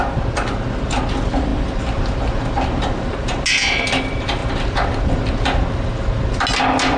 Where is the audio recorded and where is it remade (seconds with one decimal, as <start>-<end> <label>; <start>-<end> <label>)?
0.0-7.0 recorded